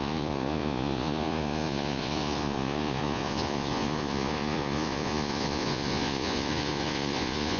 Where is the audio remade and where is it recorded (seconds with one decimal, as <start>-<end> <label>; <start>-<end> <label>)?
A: 0.0-7.6 remade